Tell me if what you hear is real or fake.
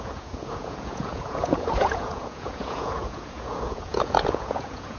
fake